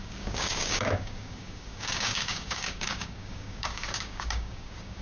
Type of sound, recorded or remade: remade